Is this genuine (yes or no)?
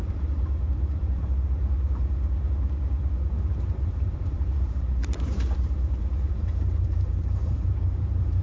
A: no